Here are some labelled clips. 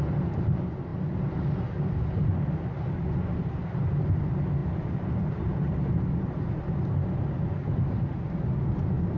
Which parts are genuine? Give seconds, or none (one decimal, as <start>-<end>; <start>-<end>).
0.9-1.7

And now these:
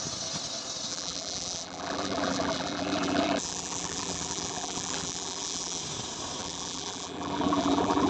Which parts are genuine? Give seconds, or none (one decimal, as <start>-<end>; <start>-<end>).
0.0-0.9; 5.8-6.4

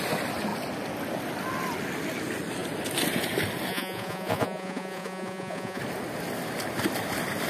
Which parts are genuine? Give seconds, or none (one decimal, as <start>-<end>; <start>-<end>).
0.0-3.7; 5.8-7.5

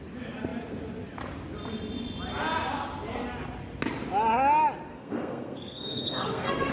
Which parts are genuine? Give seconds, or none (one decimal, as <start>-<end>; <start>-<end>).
0.0-4.9

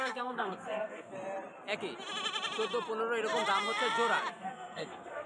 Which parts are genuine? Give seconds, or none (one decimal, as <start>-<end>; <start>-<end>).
1.1-4.3

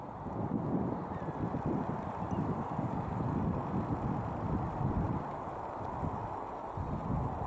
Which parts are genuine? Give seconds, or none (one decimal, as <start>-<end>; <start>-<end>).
0.0-7.5